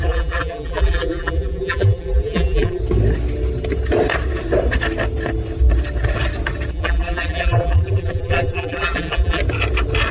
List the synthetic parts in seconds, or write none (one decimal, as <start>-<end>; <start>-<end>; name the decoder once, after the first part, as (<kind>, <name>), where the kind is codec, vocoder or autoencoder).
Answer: 0.0-2.8 (vocoder, BigVGAN v2); 6.7-9.4

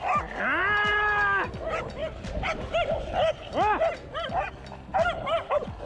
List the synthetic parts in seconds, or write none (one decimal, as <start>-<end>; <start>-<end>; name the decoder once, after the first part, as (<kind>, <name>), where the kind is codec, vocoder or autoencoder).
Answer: none

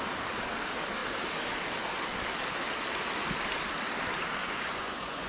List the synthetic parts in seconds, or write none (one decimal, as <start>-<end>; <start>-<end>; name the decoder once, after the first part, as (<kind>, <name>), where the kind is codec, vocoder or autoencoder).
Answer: 4.4-5.3 (vocoder, Vocos)

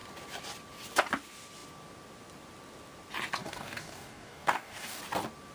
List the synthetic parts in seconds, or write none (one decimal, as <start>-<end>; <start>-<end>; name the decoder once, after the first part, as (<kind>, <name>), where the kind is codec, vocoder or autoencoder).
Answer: 3.4-5.0 (codec, DAC)

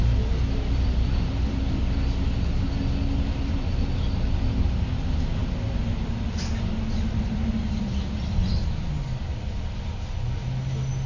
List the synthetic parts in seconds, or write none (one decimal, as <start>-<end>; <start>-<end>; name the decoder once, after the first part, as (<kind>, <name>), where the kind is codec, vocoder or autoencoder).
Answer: none

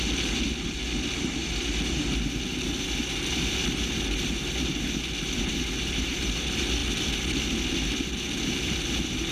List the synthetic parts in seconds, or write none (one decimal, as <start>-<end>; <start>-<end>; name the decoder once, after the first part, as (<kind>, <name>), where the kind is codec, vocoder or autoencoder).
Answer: none